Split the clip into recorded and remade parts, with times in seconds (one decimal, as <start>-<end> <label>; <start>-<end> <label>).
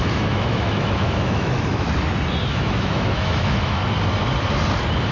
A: 0.0-1.9 remade; 1.9-2.4 recorded; 2.4-3.8 remade; 3.8-5.1 recorded